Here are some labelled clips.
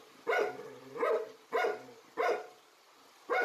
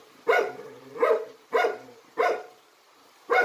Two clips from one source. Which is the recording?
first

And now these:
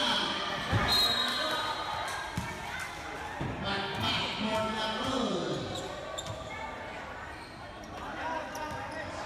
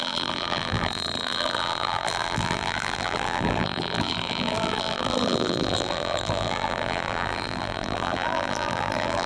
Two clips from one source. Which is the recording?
first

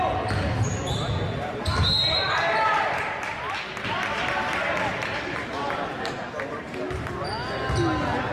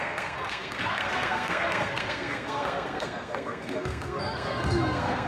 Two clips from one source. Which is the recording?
first